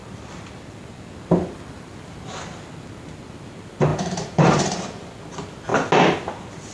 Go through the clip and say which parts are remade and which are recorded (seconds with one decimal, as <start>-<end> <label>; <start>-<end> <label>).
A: 0.0-3.9 recorded; 3.9-5.1 remade; 5.1-6.7 recorded